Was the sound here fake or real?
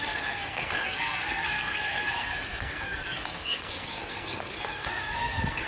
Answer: fake